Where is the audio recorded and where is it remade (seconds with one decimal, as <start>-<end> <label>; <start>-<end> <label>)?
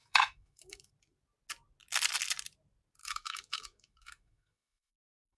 0.0-0.9 remade; 0.9-3.0 recorded; 3.0-5.4 remade